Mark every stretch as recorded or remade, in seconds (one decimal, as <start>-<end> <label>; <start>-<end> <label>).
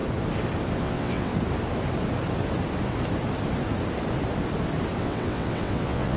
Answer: 0.0-0.8 recorded; 0.8-1.3 remade; 1.3-5.0 recorded; 5.0-6.2 remade